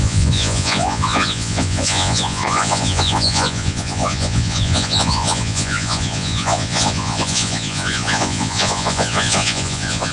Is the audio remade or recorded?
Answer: remade